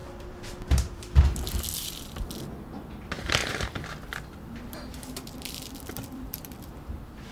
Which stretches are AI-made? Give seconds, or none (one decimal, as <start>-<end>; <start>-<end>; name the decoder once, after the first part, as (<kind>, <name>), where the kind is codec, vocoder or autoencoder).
0.0-2.4 (vocoder, BigVGAN v2); 3.4-7.3